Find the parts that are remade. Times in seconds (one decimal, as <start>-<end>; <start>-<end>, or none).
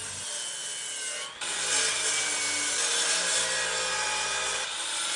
4.5-5.2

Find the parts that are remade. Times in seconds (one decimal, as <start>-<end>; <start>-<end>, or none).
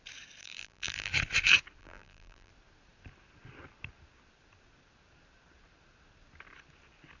0.4-1.1; 1.8-2.5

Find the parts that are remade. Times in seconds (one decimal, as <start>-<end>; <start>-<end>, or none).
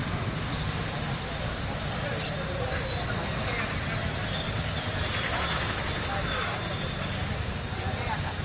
none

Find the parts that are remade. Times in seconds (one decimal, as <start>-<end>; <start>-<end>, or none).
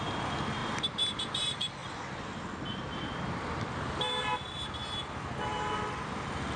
0.6-1.1